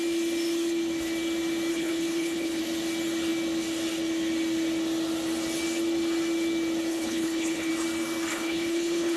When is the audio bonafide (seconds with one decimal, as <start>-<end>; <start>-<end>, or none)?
0.0-1.7; 2.6-6.9; 7.7-8.3